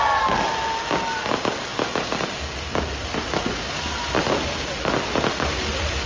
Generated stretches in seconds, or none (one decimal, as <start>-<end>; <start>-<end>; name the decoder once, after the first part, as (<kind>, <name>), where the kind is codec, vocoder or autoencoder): none